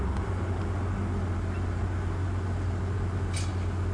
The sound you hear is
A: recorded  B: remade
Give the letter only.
A